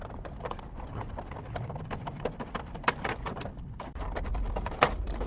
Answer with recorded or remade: remade